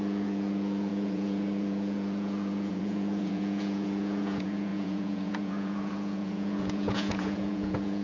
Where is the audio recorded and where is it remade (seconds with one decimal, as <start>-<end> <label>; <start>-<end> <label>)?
0.0-8.0 remade